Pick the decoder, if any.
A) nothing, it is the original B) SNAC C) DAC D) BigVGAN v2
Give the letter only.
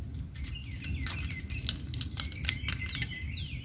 A